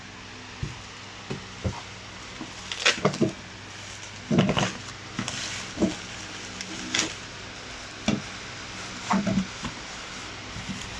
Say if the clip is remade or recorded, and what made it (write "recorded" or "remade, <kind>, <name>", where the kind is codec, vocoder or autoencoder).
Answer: recorded